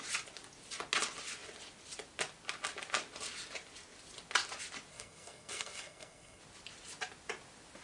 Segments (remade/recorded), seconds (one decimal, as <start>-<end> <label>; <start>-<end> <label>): 0.0-4.9 recorded; 4.9-6.4 remade; 6.4-7.8 recorded